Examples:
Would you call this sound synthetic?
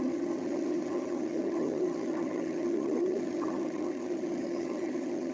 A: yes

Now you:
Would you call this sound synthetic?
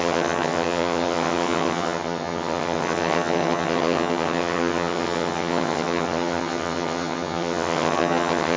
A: yes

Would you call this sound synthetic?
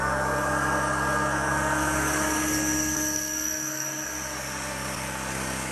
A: yes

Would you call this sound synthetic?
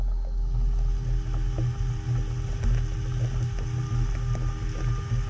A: no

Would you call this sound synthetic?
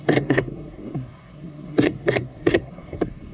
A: yes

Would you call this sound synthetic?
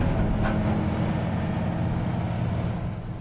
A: no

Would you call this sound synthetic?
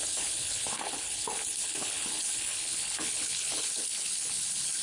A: yes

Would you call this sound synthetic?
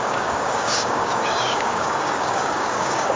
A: yes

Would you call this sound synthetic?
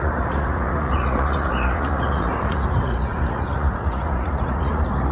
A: yes